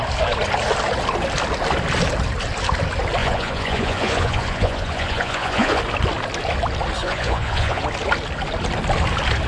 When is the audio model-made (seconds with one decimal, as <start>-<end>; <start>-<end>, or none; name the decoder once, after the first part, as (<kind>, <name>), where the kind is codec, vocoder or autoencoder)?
3.2-5.8 (vocoder, Vocos); 7.0-7.8